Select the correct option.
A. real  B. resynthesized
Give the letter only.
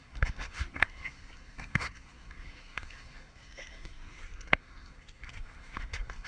B